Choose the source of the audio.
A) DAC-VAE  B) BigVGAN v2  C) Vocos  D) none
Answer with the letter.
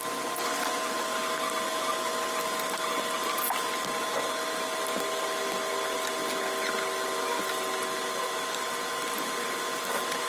D